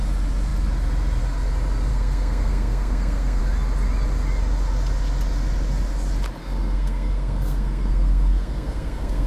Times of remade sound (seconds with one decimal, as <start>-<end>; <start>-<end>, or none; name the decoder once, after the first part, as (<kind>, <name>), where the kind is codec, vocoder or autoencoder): 1.9-3.4 (codec, SNAC); 6.4-9.3

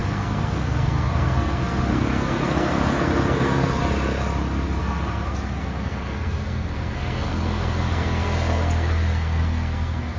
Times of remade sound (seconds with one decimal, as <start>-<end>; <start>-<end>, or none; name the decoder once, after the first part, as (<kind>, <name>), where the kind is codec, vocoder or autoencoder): 0.0-3.8 (codec, SNAC); 4.8-10.2

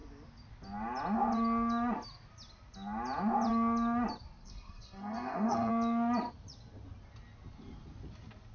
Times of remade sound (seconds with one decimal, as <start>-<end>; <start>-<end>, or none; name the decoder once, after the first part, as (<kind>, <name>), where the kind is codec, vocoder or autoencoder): 4.4-5.7 (codec, SNAC)